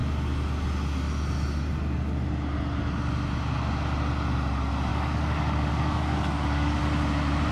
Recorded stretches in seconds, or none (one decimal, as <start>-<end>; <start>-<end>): 0.0-4.9; 6.8-7.5